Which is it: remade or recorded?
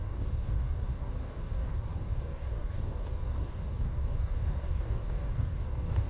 remade